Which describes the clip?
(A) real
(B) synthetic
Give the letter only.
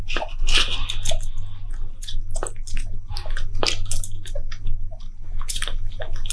A